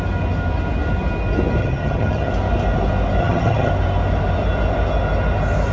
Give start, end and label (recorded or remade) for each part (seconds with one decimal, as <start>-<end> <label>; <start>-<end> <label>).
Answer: 0.0-1.6 recorded; 1.6-2.3 remade; 2.3-3.2 recorded; 3.2-3.7 remade; 3.7-5.7 recorded